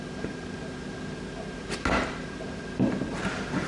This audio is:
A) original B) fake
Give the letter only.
A